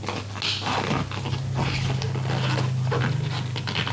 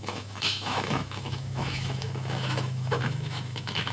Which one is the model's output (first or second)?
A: second